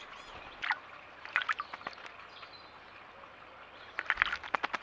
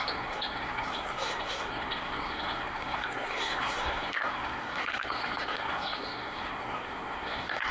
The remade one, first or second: second